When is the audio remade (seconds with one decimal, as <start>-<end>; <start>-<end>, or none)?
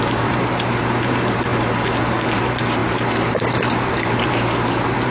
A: 0.0-1.5; 2.4-5.1